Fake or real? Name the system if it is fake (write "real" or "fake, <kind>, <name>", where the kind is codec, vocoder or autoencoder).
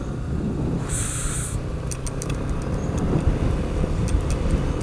real